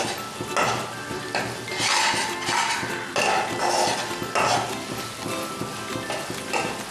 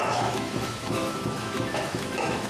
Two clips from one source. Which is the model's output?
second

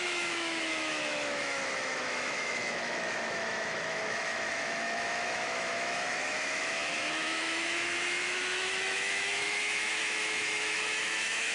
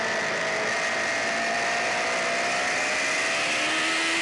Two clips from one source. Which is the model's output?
first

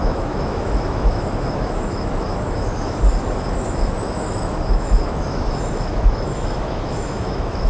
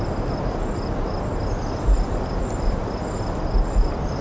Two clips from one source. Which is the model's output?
first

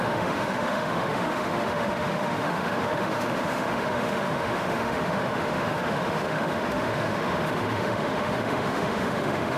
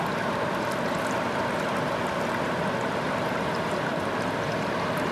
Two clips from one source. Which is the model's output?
first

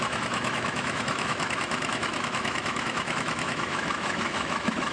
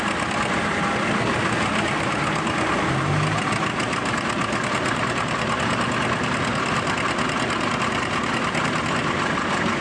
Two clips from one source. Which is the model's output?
first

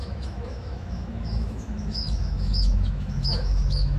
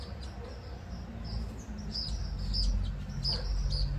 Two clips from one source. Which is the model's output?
first